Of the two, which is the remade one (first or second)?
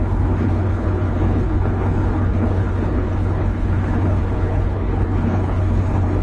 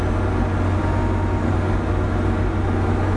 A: first